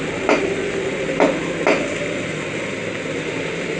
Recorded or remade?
recorded